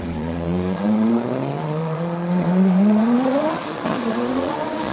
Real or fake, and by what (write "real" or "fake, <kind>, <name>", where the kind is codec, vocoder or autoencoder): fake, vocoder, Vocos